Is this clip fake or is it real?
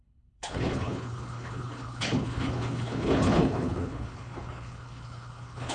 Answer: fake